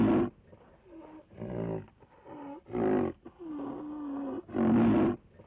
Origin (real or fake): real